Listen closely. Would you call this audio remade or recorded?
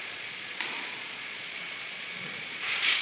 remade